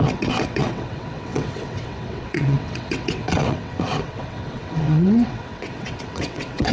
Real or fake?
fake